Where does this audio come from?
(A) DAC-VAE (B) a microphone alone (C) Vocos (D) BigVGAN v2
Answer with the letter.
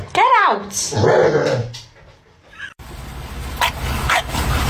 D